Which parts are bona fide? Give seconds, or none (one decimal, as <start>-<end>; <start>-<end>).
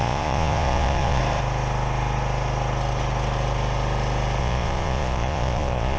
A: 1.2-4.4